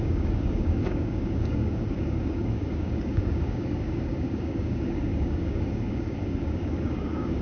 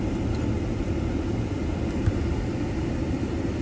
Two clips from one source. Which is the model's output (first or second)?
first